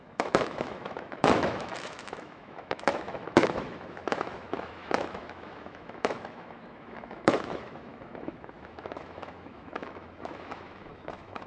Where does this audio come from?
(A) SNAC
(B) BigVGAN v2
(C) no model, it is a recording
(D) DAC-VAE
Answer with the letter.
D